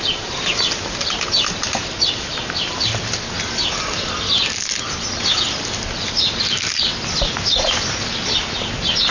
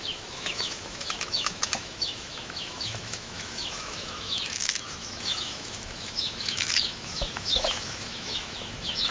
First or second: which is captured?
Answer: first